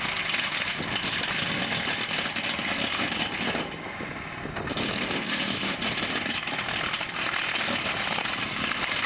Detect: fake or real fake